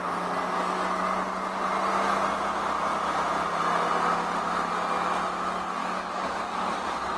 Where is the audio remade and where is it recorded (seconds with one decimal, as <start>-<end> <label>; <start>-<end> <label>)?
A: 0.0-5.8 recorded; 5.8-7.2 remade